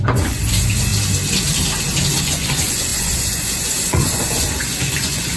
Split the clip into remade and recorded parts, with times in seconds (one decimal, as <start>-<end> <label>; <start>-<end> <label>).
0.0-0.9 remade; 0.9-2.2 recorded; 2.2-5.4 remade